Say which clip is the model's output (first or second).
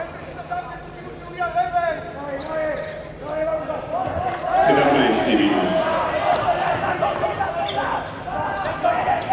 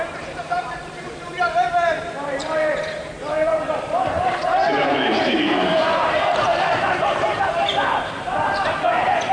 second